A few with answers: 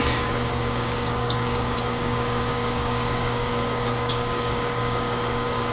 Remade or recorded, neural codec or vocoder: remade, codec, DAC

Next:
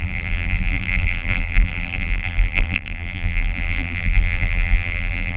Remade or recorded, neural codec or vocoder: remade, vocoder, BigVGAN v2